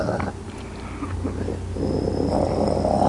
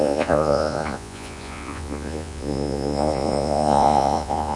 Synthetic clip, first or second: second